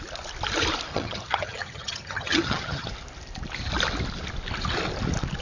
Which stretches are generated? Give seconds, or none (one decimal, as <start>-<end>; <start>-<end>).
0.9-2.9